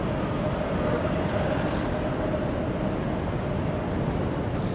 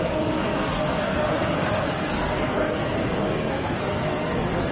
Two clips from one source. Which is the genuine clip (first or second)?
first